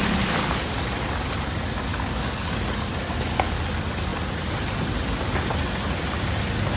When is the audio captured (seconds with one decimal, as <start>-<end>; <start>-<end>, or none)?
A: 0.0-1.9; 2.6-6.8